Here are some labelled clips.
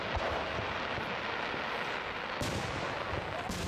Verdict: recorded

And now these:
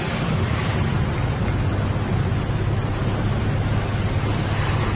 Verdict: recorded